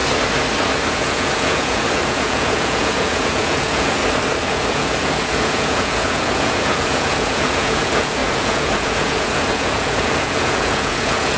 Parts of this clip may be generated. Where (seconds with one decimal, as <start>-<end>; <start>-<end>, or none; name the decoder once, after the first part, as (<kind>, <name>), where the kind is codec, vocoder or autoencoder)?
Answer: 0.9-4.0 (vocoder, Vocos); 4.5-11.4

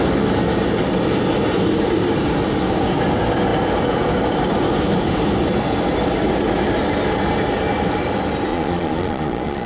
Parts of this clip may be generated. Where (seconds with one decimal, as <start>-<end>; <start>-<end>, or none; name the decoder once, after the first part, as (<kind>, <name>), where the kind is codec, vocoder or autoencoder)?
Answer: 8.5-9.7 (vocoder, Vocos)